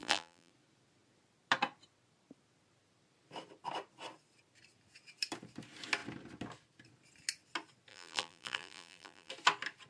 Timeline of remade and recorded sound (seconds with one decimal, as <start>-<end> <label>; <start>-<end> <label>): 0.0-0.5 remade; 0.5-7.9 recorded; 7.9-9.3 remade; 9.3-9.9 recorded